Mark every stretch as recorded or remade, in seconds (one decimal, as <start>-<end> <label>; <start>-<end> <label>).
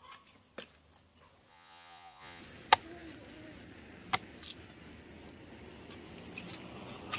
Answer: 0.0-1.5 recorded; 1.5-2.4 remade; 2.4-7.2 recorded